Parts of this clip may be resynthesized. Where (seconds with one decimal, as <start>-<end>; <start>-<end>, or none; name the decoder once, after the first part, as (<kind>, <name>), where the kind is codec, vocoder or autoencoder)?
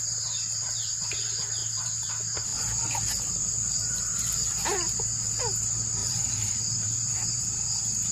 1.6-2.1 (vocoder, BigVGAN v2); 6.0-7.4